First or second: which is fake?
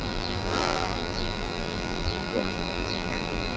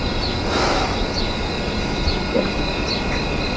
first